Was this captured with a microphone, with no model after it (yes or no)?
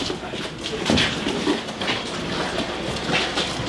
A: yes